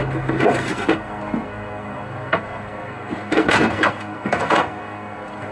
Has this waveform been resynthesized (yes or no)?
yes